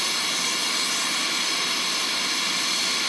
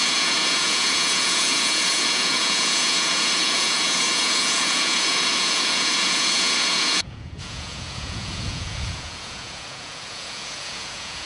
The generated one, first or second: second